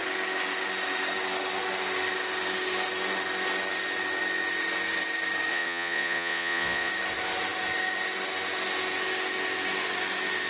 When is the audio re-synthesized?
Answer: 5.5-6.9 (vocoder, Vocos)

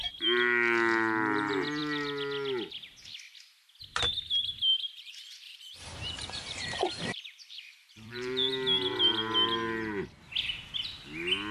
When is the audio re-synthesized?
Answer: 4.7-8.5 (vocoder, BigVGAN v2)

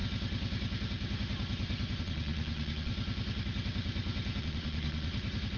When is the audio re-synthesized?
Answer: 2.0-2.9 (vocoder, Vocos); 4.4-5.1

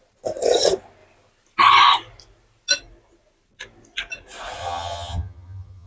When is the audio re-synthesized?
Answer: 4.6-5.9 (vocoder, HiFi-GAN)

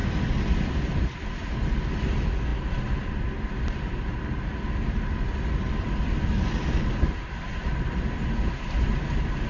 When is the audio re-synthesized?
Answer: none

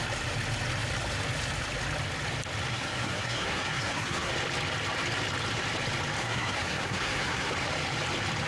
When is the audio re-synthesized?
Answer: 2.7-4.3 (codec, SNAC); 6.2-7.5